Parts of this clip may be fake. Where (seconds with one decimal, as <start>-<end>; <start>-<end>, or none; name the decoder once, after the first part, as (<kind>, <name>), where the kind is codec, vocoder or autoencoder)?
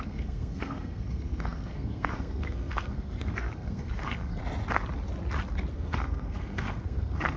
0.0-4.4 (codec, SNAC); 5.7-7.4